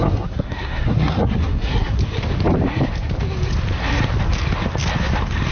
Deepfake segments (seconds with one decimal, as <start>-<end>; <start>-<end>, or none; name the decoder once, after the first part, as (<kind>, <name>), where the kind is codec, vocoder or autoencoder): 0.0-2.0 (codec, SNAC)